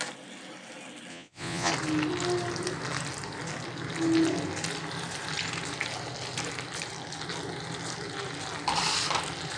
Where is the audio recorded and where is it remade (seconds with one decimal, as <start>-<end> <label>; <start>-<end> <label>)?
0.0-1.1 recorded; 1.1-1.7 remade; 1.7-9.6 recorded

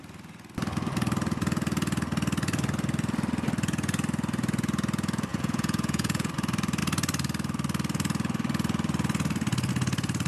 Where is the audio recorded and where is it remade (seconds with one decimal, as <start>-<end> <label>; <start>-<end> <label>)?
0.0-5.3 recorded; 5.3-6.3 remade; 6.3-10.3 recorded

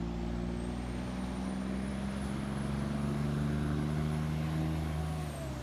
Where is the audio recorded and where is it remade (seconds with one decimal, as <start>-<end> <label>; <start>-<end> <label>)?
0.0-5.6 recorded

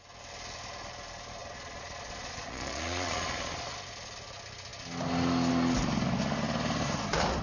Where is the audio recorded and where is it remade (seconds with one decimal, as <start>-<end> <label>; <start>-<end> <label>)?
0.0-1.4 recorded; 1.4-3.7 remade; 3.7-7.4 recorded

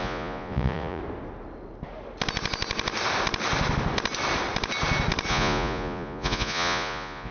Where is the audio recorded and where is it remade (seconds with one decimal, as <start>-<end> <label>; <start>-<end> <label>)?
0.0-1.0 remade; 1.0-5.3 recorded; 5.3-7.3 remade